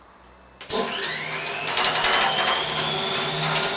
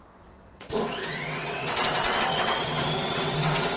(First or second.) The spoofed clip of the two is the second